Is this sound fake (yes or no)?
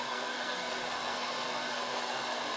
yes